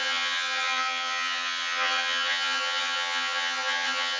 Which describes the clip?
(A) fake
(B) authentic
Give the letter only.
A